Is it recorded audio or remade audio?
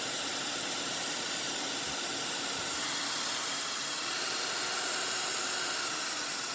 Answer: recorded